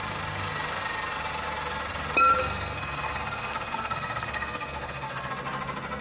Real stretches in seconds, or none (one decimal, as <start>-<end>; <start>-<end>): 0.0-2.4; 5.3-6.0